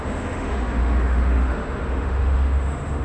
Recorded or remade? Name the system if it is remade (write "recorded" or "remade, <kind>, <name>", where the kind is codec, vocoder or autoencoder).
remade, autoencoder, DAC-VAE